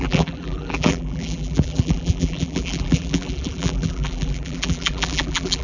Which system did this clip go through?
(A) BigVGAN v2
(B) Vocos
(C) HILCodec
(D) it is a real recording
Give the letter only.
A